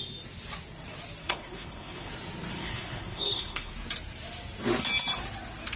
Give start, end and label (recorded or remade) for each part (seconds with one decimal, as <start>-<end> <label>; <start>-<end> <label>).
0.0-1.2 recorded; 1.2-2.1 remade; 2.1-2.5 recorded; 2.5-3.7 remade; 3.7-5.8 recorded